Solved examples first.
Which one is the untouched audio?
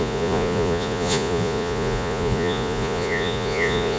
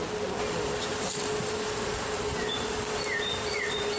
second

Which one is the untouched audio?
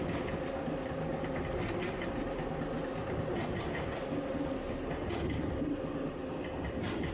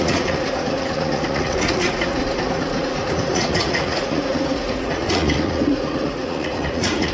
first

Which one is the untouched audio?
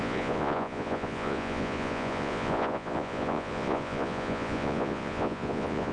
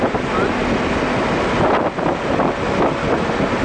second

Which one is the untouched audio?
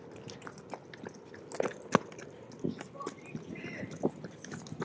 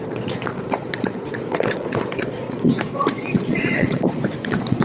first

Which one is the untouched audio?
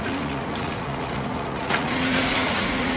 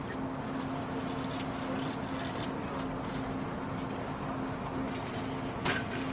second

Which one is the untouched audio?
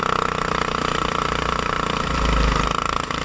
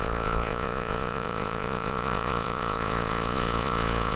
first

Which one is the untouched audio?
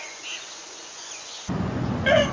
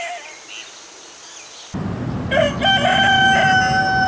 second